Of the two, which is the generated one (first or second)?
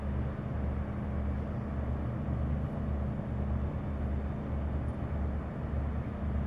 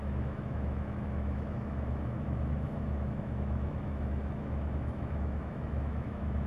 second